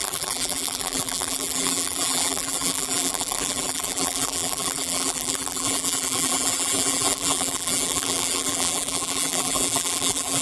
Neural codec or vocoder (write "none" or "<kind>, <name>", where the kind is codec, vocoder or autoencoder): vocoder, BigVGAN v2